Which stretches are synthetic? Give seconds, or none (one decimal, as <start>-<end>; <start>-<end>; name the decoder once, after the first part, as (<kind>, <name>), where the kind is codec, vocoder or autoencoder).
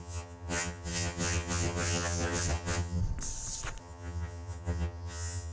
0.0-3.0 (vocoder, HiFi-GAN); 3.8-5.5